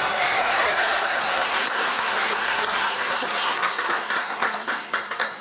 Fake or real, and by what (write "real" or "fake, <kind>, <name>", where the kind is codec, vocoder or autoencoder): fake, codec, SNAC